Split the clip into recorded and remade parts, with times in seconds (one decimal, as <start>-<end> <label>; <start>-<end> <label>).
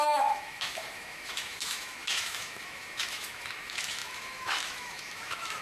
0.0-5.6 remade